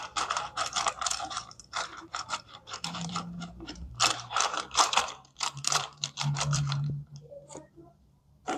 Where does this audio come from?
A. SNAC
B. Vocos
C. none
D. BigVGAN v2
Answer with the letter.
D